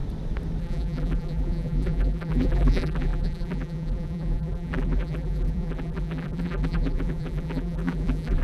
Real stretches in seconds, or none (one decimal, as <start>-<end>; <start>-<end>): 0.0-0.6